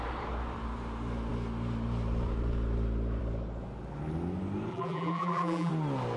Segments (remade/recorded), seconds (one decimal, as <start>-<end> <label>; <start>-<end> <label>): 0.0-4.7 recorded; 4.7-5.7 remade; 5.7-6.2 recorded

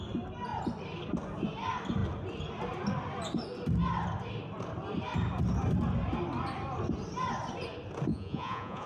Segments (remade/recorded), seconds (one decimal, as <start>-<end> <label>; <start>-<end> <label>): 0.0-8.1 recorded; 8.1-8.9 remade

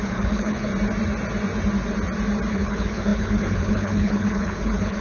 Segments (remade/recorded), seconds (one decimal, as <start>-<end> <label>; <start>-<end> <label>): 0.0-0.7 remade; 0.7-2.5 recorded; 2.5-5.0 remade